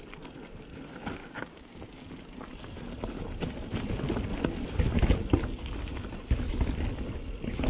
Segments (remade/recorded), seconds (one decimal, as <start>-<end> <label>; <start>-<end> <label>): 0.0-1.2 recorded; 1.2-2.5 remade; 2.5-7.7 recorded